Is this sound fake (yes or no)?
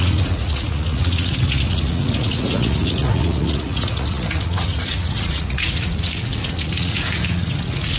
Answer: yes